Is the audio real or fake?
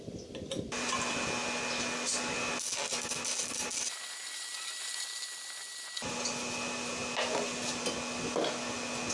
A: real